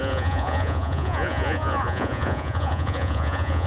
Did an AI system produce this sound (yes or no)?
yes